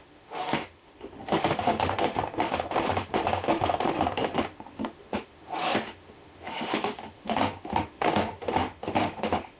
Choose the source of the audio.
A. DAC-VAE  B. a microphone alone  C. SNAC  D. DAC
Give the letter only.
A